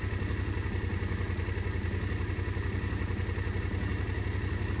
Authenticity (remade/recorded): recorded